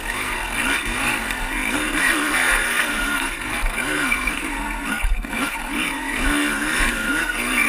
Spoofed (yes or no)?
yes